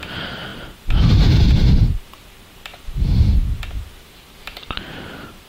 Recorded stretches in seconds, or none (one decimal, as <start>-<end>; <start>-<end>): 2.7-4.0